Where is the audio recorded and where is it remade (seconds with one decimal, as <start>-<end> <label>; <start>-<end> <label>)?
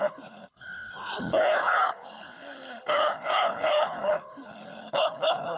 0.0-5.6 remade